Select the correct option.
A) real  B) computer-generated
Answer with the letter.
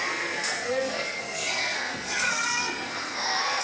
B